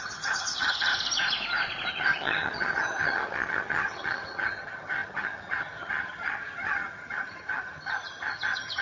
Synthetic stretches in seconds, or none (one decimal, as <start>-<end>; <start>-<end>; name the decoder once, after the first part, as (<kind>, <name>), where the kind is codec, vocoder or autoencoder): 0.0-0.9 (vocoder, HiFi-GAN); 1.9-8.8